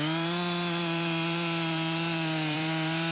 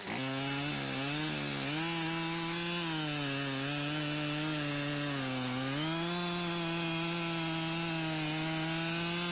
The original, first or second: second